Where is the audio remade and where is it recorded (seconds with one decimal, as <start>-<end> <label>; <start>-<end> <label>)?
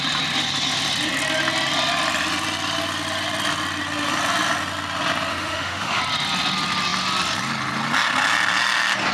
0.0-5.3 recorded; 5.3-6.0 remade; 6.0-9.1 recorded